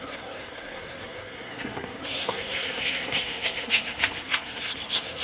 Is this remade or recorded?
remade